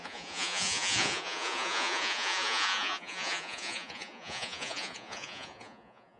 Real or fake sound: fake